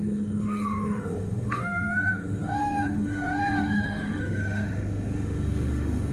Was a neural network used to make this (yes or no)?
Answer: yes